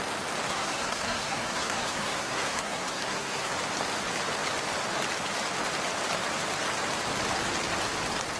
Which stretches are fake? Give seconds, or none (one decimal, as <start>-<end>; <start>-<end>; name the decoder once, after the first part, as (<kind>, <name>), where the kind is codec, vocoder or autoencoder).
0.5-3.5 (codec, SNAC)

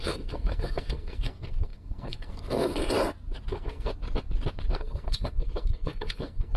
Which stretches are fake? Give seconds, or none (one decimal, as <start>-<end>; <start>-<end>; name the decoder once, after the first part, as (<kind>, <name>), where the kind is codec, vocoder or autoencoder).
0.0-2.8 (codec, SNAC); 3.5-3.9; 4.7-6.6

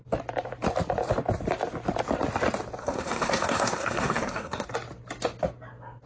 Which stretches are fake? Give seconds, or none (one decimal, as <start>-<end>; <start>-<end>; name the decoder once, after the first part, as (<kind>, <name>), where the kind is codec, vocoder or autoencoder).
2.8-4.7 (codec, SNAC)

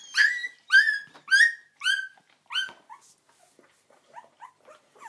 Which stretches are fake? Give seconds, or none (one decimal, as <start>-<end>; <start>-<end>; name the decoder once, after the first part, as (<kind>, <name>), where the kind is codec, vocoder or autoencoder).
none

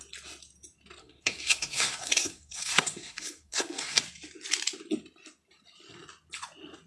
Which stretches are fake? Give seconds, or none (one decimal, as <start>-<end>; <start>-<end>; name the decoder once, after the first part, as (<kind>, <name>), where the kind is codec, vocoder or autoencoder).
1.0-4.0 (codec, SNAC)

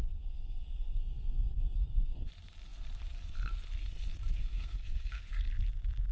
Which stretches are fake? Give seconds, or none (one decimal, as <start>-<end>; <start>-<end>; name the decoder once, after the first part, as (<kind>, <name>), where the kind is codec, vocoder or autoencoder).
0.0-2.3 (codec, SNAC); 4.4-5.3

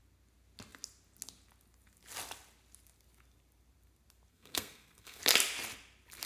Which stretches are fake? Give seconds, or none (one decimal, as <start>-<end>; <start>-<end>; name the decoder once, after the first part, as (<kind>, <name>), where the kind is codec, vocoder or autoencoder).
4.3-5.2 (codec, SNAC)

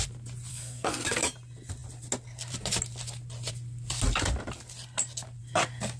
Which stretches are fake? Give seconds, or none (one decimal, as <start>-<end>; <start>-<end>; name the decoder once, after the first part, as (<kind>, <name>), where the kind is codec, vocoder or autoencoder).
0.5-1.2 (codec, SNAC)